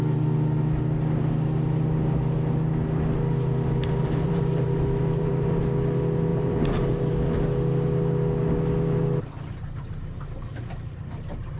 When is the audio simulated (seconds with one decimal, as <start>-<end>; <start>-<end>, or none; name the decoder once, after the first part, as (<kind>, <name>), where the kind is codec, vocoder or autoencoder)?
4.0-5.6 (vocoder, BigVGAN v2); 6.3-7.1